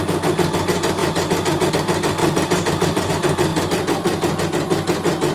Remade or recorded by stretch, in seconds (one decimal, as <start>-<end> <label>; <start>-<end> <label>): 0.0-2.2 recorded; 2.2-3.1 remade; 3.1-5.3 recorded